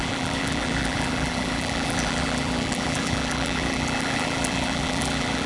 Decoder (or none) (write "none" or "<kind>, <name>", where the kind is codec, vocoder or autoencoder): vocoder, BigVGAN v2